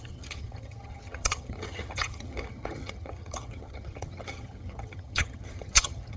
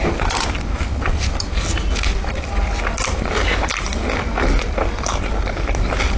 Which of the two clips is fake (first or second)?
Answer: first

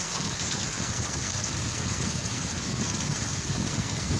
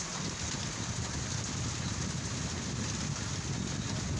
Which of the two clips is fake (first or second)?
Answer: first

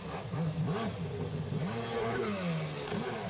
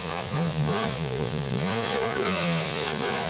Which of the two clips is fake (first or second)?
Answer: second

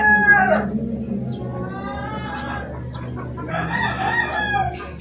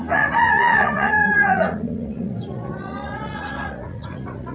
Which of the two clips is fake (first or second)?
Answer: second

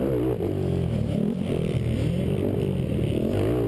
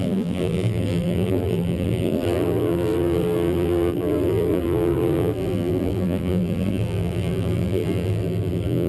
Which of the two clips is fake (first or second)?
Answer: second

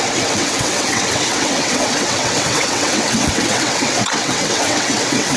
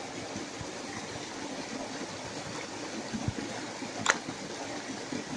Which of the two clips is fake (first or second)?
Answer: first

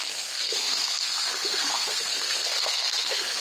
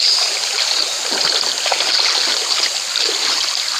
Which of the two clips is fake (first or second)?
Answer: first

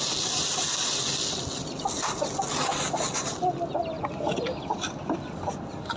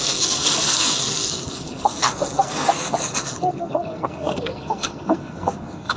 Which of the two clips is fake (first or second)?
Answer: second